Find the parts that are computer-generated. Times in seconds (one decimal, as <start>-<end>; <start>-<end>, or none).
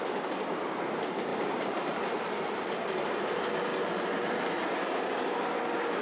1.3-2.7; 3.7-4.5